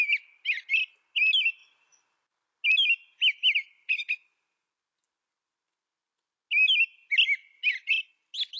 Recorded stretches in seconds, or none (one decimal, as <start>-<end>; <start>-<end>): 0.0-8.6